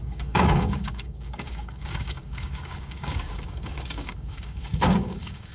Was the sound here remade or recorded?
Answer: remade